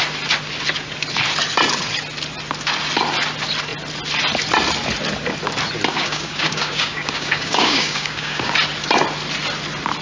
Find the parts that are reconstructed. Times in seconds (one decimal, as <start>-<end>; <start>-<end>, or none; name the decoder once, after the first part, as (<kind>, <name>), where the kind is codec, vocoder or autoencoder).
5.9-8.5 (codec, DAC)